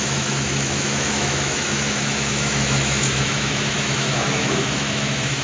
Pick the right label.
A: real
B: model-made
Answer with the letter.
B